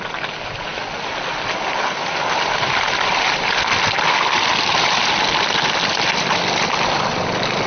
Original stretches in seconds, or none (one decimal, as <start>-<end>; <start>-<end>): 0.0-7.7